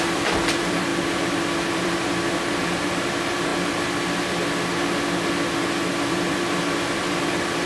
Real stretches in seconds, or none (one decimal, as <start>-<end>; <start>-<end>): 3.5-5.9